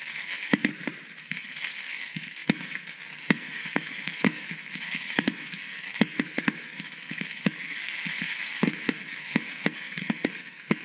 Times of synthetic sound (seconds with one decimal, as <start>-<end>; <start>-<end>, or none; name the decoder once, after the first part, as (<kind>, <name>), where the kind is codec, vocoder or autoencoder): 0.0-0.7 (codec, SNAC); 1.2-10.8